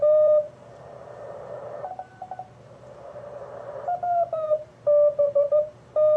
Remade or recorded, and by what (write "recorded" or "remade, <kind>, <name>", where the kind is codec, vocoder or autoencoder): remade, vocoder, BigVGAN v2